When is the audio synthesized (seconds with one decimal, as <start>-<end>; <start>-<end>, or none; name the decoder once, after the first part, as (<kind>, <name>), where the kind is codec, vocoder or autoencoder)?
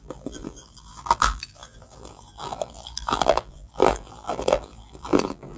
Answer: 0.0-5.6 (vocoder, BigVGAN v2)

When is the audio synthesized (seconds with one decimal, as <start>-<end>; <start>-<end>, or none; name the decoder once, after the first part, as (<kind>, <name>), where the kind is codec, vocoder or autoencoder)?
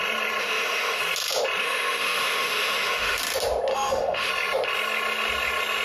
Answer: 0.4-1.0 (autoencoder, DAC-VAE); 1.6-3.2; 3.7-4.3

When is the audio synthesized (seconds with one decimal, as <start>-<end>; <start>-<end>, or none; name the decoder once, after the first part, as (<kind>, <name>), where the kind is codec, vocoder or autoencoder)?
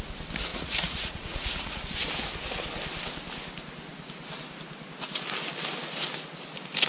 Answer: 0.5-1.8 (vocoder, Vocos)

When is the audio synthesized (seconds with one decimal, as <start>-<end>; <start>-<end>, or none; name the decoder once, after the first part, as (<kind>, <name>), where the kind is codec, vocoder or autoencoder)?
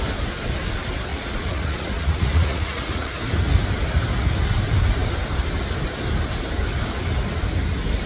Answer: 1.1-3.2 (vocoder, Vocos)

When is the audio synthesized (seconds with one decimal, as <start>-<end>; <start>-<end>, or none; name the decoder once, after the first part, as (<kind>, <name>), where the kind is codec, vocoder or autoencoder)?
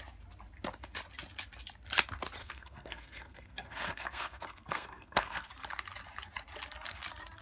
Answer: 2.4-5.5 (codec, SNAC)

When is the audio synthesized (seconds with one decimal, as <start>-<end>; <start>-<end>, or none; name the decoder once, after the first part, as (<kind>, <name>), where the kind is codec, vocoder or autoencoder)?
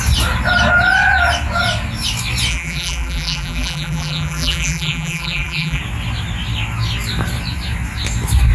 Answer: 2.5-5.8 (vocoder, BigVGAN v2)